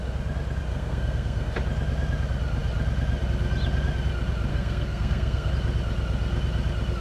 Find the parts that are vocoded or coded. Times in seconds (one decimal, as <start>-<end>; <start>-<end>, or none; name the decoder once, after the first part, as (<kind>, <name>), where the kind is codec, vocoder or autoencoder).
0.7-1.6 (codec, SNAC); 4.5-5.5